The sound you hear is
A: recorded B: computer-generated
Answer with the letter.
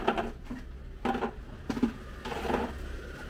A